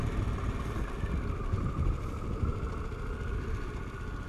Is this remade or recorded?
recorded